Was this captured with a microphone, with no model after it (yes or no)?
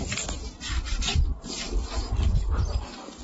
yes